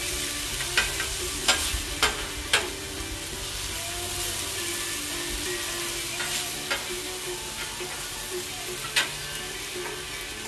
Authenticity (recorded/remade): recorded